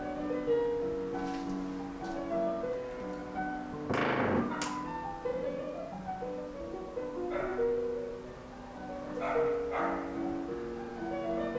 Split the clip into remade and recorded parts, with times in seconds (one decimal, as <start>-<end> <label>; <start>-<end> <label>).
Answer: 0.0-5.3 recorded; 5.3-6.0 remade; 6.0-11.6 recorded